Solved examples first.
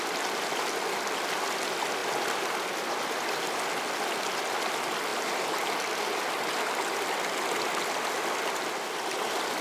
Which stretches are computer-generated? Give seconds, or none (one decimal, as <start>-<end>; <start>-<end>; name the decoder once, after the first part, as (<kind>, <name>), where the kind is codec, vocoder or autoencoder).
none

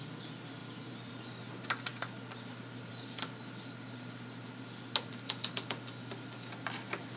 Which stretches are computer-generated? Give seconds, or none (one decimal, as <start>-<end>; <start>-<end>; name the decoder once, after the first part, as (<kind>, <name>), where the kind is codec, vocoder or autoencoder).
none

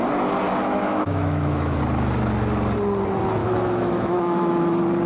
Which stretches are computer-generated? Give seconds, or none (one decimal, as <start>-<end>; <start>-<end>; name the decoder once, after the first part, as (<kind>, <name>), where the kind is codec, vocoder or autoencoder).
0.6-1.8 (autoencoder, DAC-VAE); 3.4-4.6

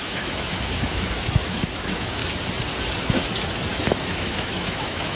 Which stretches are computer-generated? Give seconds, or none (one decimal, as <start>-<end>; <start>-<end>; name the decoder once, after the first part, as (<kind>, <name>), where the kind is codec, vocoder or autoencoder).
0.0-2.2 (autoencoder, DAC-VAE); 3.7-5.2

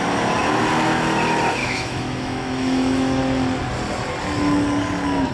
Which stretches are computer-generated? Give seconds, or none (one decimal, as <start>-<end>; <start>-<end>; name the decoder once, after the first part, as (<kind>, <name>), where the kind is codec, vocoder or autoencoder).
1.6-3.2 (autoencoder, DAC-VAE)